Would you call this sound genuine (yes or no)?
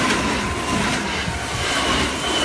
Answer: yes